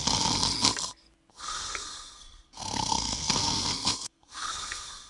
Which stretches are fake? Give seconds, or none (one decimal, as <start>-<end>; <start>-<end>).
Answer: 1.3-5.1